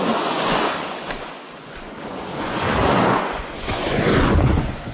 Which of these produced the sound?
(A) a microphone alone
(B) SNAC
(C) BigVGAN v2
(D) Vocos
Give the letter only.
D